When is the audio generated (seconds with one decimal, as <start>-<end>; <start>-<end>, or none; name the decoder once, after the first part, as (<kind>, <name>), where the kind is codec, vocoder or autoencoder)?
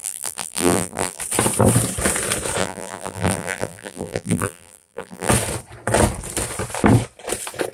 0.0-1.2 (vocoder, BigVGAN v2); 2.6-5.3